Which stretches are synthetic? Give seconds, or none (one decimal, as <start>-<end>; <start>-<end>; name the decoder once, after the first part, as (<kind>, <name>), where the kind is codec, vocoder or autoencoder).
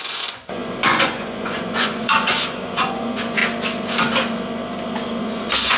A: 0.0-3.4 (vocoder, Vocos); 5.2-5.8